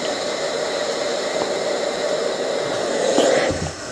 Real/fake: real